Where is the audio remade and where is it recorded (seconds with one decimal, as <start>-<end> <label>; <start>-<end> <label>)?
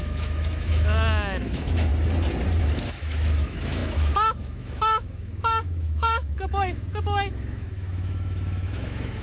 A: 0.0-1.9 remade; 1.9-2.6 recorded; 2.6-9.2 remade